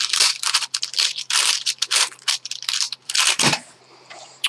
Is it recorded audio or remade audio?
remade